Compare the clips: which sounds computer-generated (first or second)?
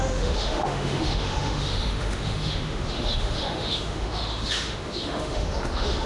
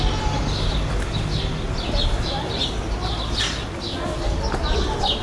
first